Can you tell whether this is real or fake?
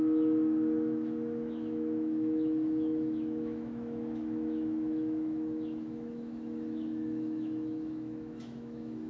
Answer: fake